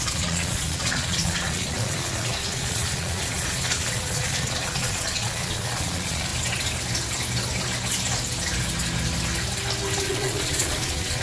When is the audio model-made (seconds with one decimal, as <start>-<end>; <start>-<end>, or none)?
0.0-6.3; 10.0-11.2